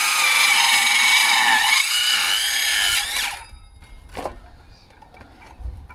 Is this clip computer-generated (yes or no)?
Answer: no